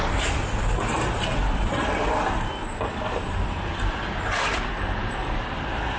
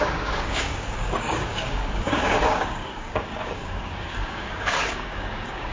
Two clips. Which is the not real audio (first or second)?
second